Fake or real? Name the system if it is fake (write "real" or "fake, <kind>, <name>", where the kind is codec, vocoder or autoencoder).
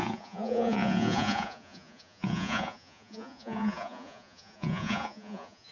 fake, vocoder, Vocos